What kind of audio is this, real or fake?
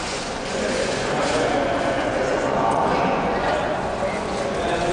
fake